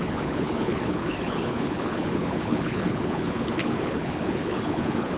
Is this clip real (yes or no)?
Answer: no